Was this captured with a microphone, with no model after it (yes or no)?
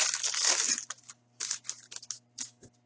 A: yes